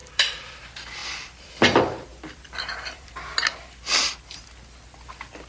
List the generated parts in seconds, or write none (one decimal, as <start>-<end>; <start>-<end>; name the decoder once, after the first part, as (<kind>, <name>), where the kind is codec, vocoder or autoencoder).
0.0-0.6 (vocoder, BigVGAN v2); 1.0-1.6; 2.1-3.4